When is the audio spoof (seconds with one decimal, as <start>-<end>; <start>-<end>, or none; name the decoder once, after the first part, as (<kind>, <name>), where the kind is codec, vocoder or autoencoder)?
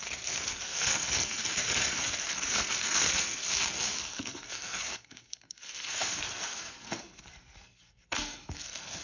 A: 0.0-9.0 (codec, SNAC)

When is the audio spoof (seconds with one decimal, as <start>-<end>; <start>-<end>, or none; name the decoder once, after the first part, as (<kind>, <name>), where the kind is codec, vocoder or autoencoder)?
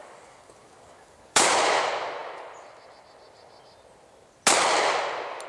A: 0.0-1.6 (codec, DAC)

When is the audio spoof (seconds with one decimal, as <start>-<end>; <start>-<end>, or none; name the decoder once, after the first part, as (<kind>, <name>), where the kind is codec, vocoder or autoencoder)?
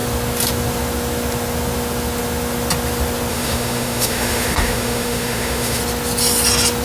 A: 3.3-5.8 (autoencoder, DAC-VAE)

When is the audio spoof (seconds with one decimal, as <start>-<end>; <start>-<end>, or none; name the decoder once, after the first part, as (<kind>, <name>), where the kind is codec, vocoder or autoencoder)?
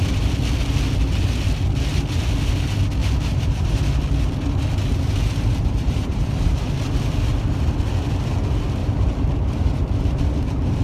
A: 3.0-3.8 (vocoder, BigVGAN v2); 4.8-6.7; 8.8-10.8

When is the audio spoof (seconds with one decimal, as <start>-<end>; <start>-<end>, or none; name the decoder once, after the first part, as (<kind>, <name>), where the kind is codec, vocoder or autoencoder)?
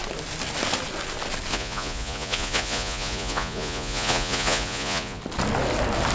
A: 1.5-5.2 (vocoder, Vocos)